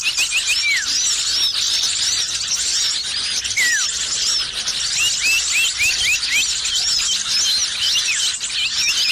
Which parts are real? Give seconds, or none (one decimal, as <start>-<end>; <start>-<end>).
0.0-9.1